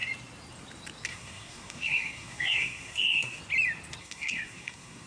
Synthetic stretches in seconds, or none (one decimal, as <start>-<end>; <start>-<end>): 1.1-3.4; 4.0-5.1